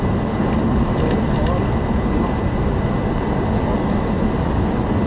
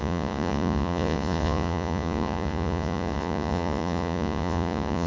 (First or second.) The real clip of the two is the first